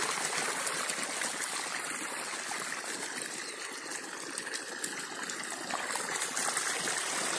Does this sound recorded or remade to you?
recorded